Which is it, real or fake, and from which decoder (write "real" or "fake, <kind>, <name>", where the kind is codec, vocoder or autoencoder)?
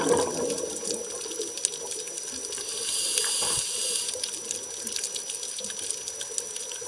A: real